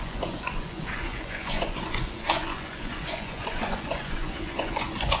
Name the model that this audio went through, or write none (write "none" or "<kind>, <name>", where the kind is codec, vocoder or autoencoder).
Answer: vocoder, Vocos